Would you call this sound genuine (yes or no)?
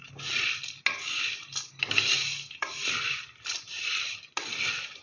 yes